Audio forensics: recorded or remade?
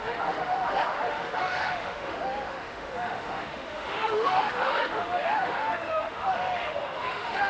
remade